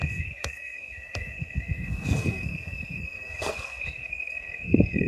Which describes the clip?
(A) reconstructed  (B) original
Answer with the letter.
A